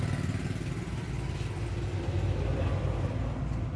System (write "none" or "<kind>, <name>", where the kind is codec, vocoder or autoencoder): none